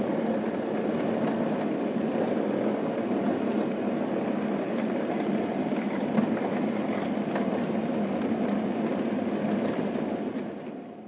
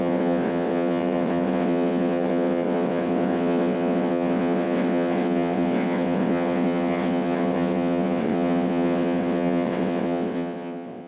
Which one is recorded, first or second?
first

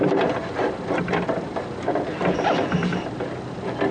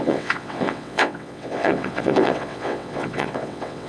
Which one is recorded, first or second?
first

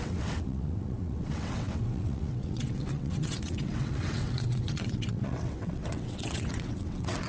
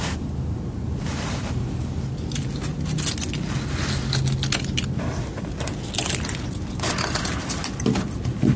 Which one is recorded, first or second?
second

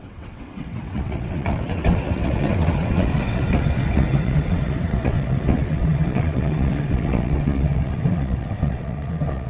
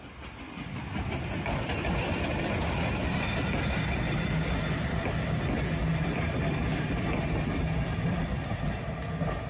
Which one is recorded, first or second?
second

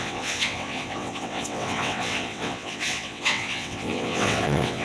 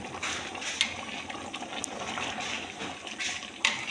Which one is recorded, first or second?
second